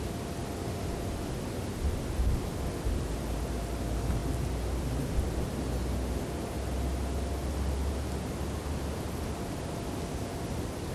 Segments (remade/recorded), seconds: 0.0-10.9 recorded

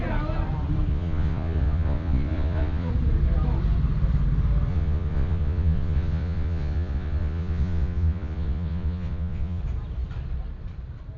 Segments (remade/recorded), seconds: 0.0-0.9 recorded; 0.9-2.9 remade; 2.9-4.7 recorded; 4.7-9.6 remade; 9.6-11.2 recorded

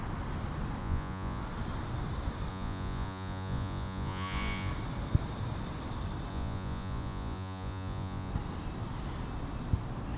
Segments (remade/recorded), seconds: 0.0-0.8 recorded; 0.8-1.4 remade; 1.4-2.5 recorded; 2.5-4.7 remade; 4.7-6.3 recorded; 6.3-8.3 remade; 8.3-10.2 recorded

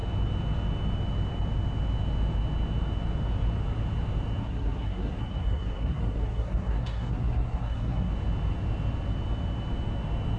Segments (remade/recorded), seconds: 0.0-4.4 recorded; 4.4-8.1 remade; 8.1-10.4 recorded

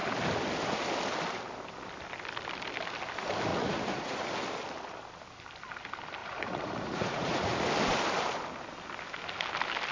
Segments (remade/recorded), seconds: 0.0-3.5 recorded; 3.5-4.2 remade; 4.2-6.2 recorded; 6.2-7.6 remade; 7.6-9.9 recorded

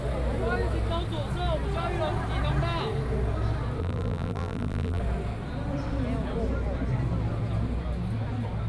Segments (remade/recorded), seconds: 0.0-3.8 recorded; 3.8-5.0 remade; 5.0-8.7 recorded